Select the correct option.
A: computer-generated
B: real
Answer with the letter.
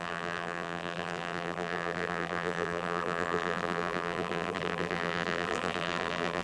A